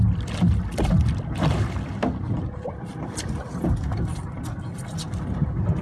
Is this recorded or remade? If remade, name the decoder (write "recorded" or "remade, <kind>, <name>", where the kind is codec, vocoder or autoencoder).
recorded